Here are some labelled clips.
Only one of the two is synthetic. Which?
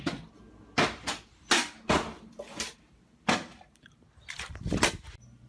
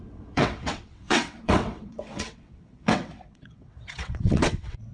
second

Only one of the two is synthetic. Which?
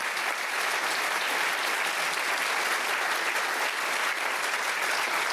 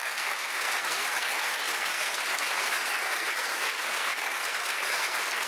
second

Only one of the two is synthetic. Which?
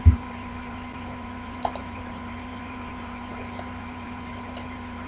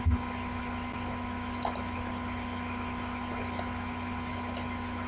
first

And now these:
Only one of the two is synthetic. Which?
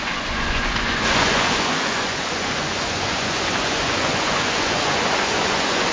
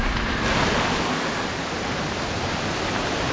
first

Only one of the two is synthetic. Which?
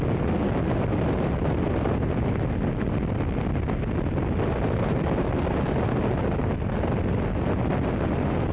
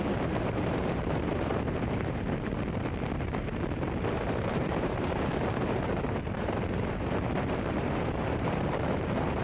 second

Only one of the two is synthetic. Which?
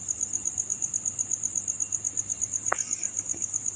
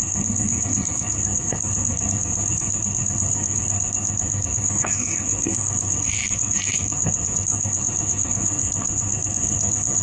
second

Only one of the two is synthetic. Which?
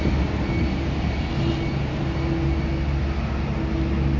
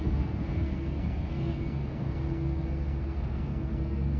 second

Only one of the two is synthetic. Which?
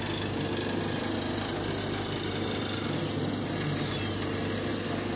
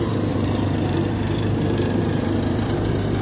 second